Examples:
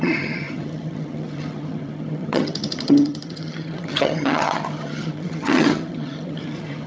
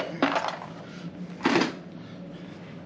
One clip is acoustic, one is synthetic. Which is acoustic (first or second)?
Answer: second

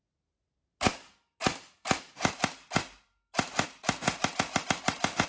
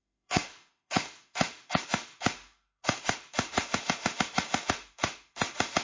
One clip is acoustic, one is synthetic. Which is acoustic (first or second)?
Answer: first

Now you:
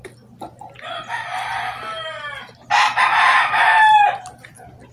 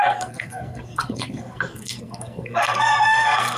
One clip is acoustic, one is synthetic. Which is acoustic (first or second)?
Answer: first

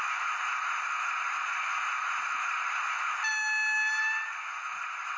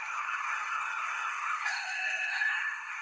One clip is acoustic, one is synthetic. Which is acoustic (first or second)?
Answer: first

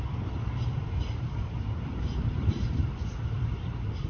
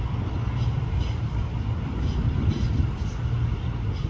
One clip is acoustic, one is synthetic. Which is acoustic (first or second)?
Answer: second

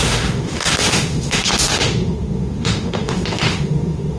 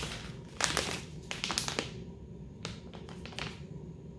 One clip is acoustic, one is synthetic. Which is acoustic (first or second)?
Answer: second